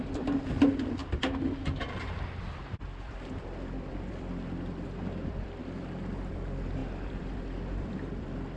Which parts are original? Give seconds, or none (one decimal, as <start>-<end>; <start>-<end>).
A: 1.0-1.8; 5.6-6.3